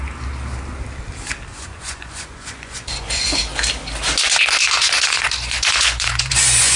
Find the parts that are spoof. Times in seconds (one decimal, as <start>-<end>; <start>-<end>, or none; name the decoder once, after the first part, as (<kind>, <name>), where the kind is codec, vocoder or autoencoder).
1.5-3.4 (vocoder, Vocos); 4.8-6.8